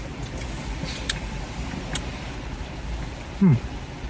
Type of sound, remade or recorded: recorded